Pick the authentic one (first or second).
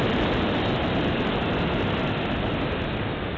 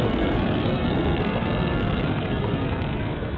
first